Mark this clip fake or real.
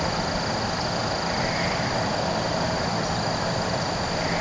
real